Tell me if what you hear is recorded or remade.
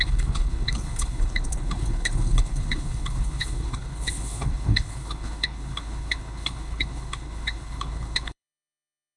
remade